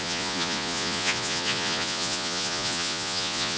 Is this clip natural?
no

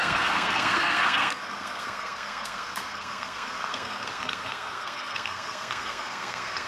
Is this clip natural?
no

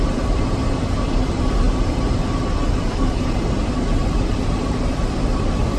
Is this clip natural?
yes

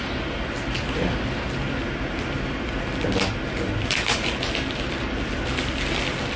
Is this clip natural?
yes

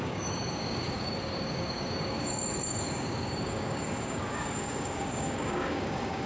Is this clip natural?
no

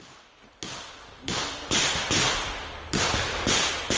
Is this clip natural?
yes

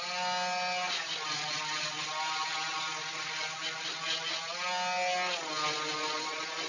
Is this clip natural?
yes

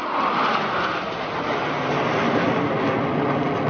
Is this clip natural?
yes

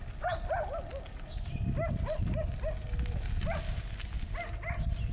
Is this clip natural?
yes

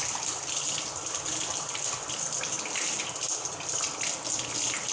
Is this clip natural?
yes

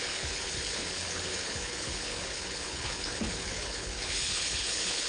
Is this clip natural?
no